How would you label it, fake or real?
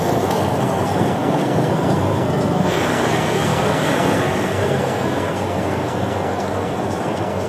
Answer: fake